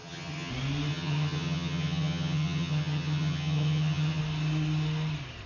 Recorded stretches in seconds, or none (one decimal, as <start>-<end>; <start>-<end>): 0.5-0.9; 4.2-5.5